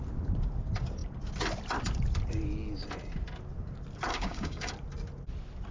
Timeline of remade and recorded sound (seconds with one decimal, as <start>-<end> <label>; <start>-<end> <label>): 0.0-4.1 recorded; 4.1-4.7 remade; 4.7-5.7 recorded